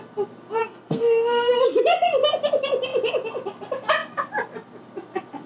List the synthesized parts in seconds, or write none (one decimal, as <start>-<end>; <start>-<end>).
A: 0.6-1.5